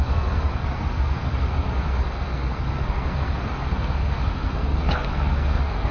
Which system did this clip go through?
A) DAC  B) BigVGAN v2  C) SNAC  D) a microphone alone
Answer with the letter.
C